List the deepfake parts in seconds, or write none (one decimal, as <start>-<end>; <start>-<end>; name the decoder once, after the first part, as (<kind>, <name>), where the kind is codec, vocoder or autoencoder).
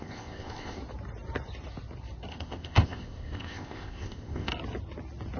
0.0-0.8 (codec, ZipCodec); 2.3-4.5